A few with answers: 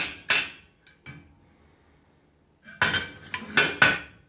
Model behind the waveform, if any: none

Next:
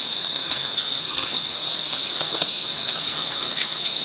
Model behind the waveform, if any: codec, SNAC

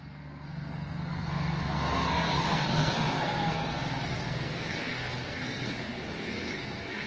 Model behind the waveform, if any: codec, SNAC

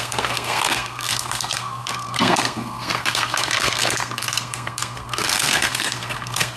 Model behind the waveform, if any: codec, SNAC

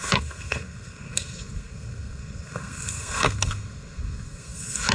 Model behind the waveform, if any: codec, SNAC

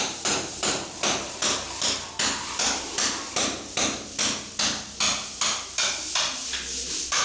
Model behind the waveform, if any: none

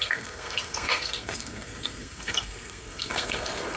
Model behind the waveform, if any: codec, SNAC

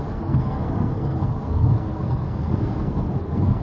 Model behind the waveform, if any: codec, SNAC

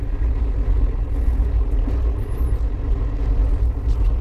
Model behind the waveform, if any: none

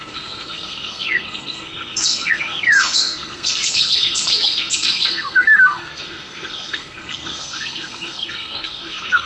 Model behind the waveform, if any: codec, SNAC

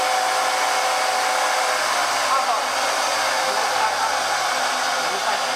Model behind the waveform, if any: none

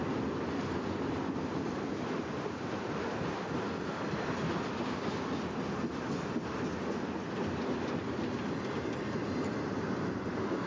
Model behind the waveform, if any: none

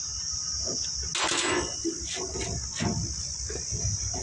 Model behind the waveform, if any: none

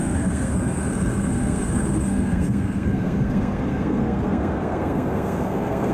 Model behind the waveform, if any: codec, SNAC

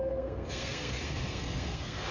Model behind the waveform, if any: codec, SNAC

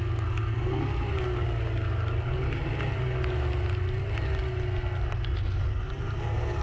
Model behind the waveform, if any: none